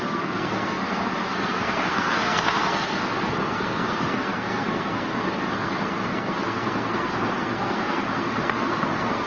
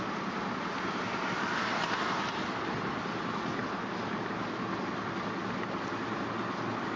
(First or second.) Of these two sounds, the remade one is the first